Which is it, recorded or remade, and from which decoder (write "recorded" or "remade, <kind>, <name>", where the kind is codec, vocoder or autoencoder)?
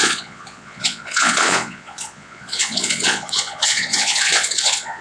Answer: remade, vocoder, Vocos